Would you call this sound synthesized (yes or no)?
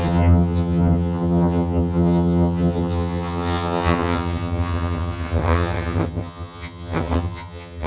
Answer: yes